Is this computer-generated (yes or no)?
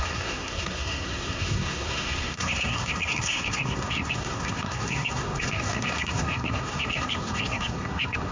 yes